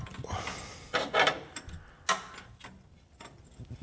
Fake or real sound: real